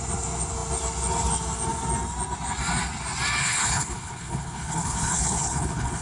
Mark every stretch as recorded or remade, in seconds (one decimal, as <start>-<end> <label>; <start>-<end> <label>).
0.0-3.4 recorded; 3.4-6.0 remade

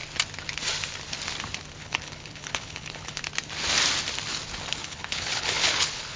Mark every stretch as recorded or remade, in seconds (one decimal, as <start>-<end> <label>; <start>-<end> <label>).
0.0-1.8 recorded; 1.8-3.2 remade; 3.2-4.8 recorded; 4.8-6.2 remade

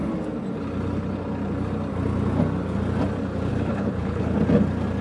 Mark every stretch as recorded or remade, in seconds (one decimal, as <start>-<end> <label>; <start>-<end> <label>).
0.0-3.5 recorded; 3.5-4.4 remade; 4.4-5.0 recorded

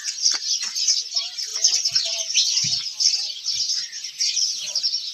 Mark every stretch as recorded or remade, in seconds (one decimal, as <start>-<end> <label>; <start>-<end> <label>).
0.0-5.1 recorded

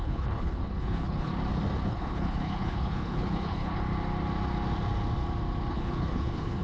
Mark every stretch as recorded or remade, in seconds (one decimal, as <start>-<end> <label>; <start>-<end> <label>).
0.0-1.3 remade; 1.3-1.9 recorded; 1.9-3.8 remade; 3.8-5.7 recorded; 5.7-6.6 remade